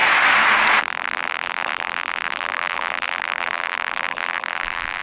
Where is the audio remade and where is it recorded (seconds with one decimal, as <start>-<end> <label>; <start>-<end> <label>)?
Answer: 0.0-0.8 recorded; 0.8-5.0 remade